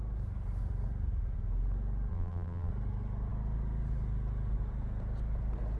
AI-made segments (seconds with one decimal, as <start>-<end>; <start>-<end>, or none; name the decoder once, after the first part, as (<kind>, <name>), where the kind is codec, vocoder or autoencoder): 2.1-2.7 (vocoder, BigVGAN v2)